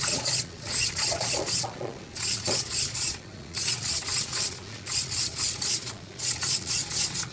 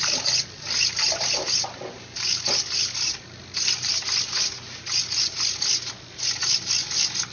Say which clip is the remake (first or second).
first